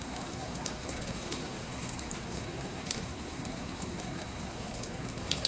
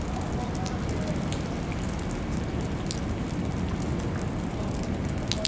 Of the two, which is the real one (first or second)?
second